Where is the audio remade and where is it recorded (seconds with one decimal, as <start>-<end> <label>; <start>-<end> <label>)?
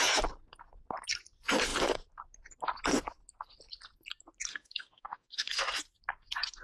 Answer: 0.0-4.5 recorded; 4.5-5.5 remade; 5.5-6.6 recorded